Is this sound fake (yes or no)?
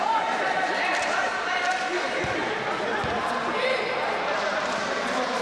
yes